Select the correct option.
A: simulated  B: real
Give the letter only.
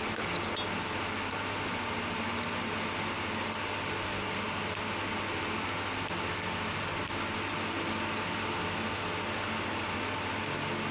B